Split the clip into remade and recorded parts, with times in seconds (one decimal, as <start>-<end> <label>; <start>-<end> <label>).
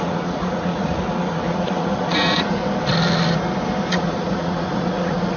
0.0-2.6 remade; 2.6-3.9 recorded; 3.9-5.4 remade